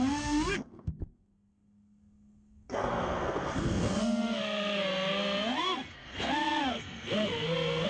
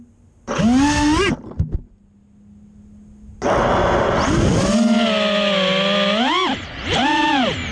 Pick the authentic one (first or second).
second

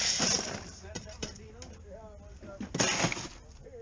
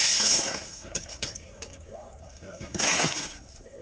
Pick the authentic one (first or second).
first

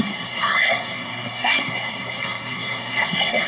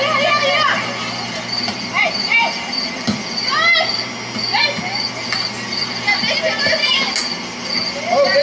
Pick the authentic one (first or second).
second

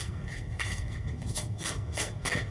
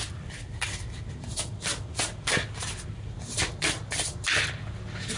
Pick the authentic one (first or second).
second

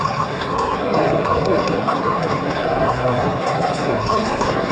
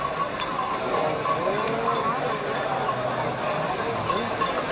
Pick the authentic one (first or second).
second